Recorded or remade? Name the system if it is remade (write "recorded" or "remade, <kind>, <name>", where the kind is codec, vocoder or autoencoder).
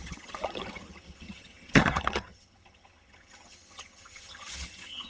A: remade, vocoder, HiFi-GAN